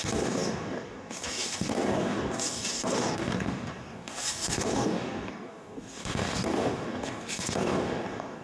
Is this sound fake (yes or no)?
yes